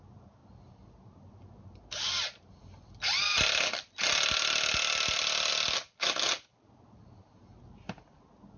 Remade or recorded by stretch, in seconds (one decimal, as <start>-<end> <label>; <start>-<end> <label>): 0.0-8.6 recorded